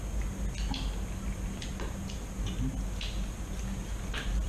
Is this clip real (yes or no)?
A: yes